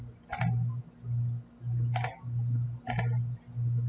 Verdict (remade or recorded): recorded